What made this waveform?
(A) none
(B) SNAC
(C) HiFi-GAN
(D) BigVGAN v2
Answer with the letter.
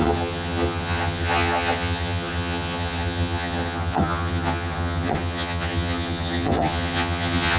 C